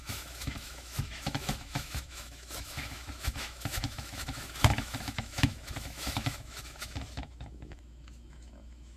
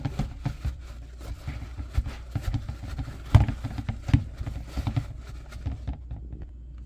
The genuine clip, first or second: second